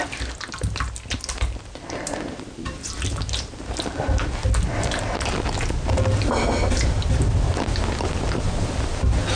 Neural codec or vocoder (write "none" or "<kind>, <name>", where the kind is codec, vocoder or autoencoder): none